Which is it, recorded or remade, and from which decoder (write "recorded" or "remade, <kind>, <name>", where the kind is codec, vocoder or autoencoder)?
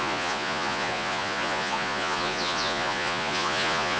remade, vocoder, Vocos